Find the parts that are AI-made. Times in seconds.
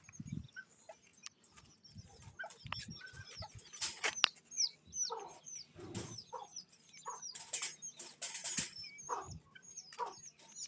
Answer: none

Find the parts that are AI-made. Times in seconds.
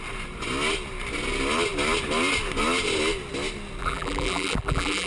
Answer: 3.8-5.1 (vocoder, BigVGAN v2)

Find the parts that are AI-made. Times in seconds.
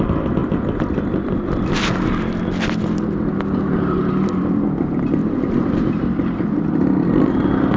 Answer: 0.4-1.6 (vocoder, BigVGAN v2); 5.2-5.9